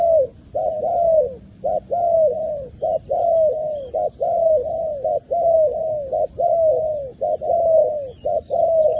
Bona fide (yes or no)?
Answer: yes